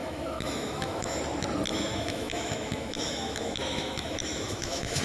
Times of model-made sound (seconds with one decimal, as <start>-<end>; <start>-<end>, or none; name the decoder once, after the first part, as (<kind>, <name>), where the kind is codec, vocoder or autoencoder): 0.0-1.2 (autoencoder, DAC-VAE); 1.7-5.0